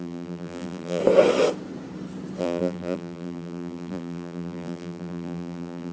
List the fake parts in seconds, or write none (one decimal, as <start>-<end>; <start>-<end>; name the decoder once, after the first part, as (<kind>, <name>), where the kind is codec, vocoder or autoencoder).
0.0-1.0 (vocoder, BigVGAN v2); 2.4-5.9